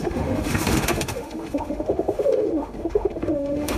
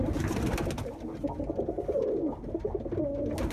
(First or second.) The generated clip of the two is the first